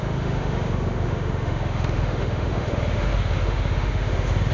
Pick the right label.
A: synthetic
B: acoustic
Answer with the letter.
A